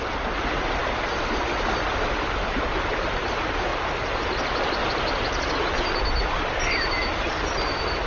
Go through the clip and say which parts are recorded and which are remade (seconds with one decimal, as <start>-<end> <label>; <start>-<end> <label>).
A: 0.0-8.1 recorded

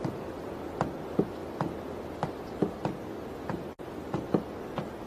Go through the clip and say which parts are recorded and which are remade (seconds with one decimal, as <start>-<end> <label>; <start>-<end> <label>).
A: 0.0-5.1 recorded